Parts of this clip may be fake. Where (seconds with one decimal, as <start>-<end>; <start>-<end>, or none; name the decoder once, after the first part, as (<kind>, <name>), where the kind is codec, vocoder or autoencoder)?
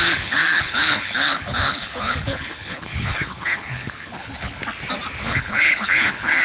0.0-4.6 (codec, HILCodec); 5.2-6.4